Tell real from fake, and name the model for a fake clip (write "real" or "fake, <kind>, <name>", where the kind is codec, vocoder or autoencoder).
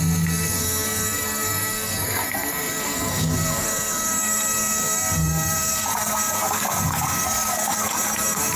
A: fake, codec, SNAC